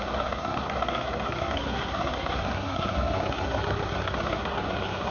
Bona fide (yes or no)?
no